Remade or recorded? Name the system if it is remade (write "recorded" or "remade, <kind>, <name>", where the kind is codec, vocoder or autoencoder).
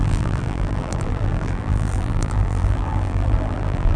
remade, vocoder, BigVGAN v2